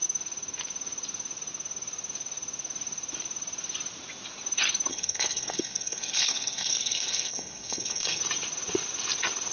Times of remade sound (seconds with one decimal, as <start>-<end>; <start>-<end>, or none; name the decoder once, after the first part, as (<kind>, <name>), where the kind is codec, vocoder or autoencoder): 4.9-8.2 (codec, SNAC)